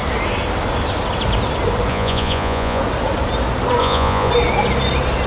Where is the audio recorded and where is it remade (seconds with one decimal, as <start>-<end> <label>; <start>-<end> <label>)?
0.0-1.9 recorded; 1.9-2.8 remade; 2.8-3.8 recorded; 3.8-4.3 remade; 4.3-5.3 recorded